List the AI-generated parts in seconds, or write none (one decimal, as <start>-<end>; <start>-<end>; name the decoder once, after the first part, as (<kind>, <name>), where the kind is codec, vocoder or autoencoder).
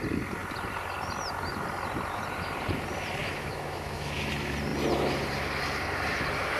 3.2-4.3 (autoencoder, DAC-VAE)